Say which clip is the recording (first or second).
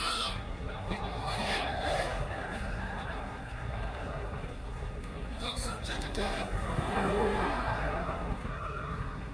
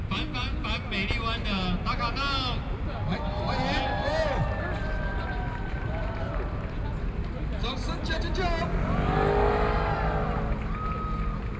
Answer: second